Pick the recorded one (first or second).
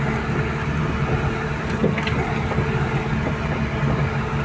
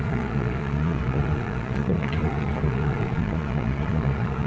first